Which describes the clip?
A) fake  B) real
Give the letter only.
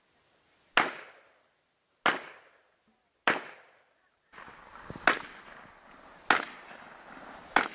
B